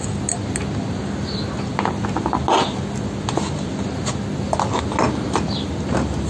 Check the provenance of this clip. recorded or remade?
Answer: recorded